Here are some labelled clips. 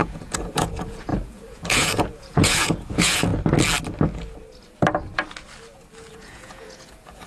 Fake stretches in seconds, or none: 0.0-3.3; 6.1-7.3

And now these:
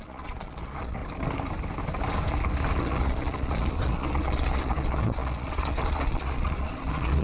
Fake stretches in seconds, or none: 0.0-1.0; 2.8-7.2